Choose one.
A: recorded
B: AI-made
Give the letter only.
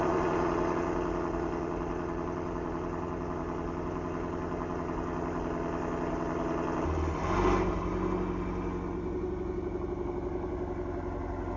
A